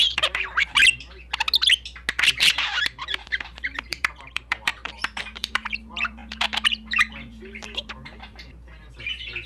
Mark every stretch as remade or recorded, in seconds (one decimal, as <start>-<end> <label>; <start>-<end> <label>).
0.0-0.8 remade; 0.8-2.2 recorded; 2.2-9.5 remade